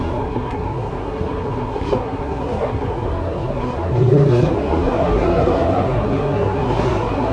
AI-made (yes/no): yes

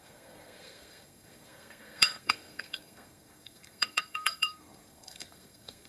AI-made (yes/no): yes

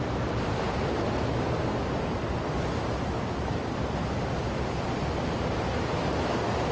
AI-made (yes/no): no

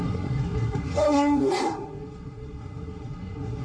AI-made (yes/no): yes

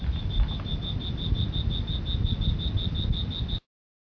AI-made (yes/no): no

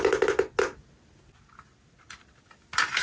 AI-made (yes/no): no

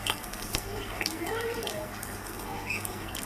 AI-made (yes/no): yes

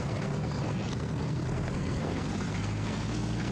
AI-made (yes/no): yes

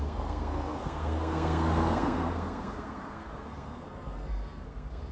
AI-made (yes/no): yes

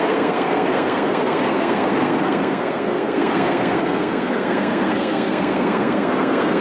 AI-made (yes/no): yes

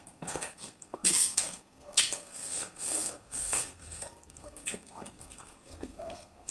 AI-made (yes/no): yes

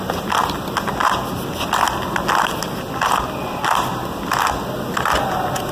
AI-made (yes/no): no